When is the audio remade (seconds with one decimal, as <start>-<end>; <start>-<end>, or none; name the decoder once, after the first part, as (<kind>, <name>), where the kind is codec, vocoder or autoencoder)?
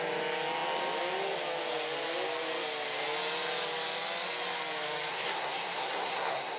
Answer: 5.1-6.6 (codec, SNAC)